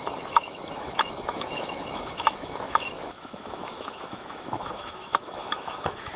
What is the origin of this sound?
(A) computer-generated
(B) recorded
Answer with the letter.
A